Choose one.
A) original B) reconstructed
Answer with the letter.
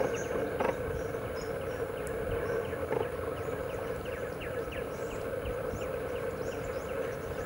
A